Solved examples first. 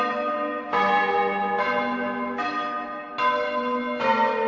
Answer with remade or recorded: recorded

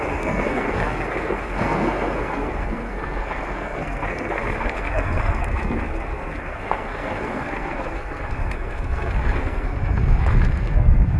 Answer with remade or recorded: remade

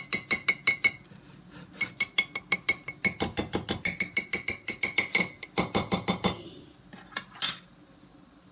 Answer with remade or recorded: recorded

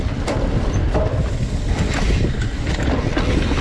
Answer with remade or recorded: recorded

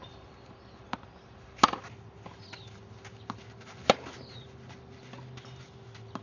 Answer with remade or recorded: recorded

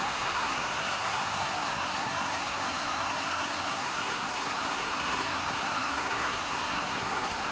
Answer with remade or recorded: remade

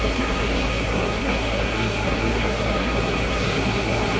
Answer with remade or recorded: remade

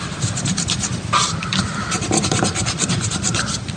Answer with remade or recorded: recorded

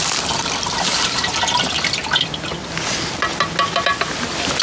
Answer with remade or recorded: recorded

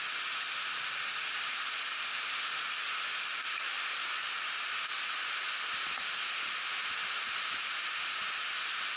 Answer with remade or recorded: recorded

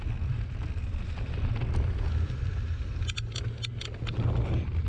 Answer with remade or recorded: recorded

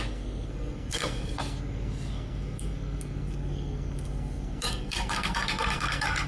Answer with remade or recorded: remade